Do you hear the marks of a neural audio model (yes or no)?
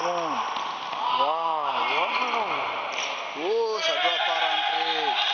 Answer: no